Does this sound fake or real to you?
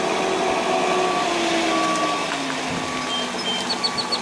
real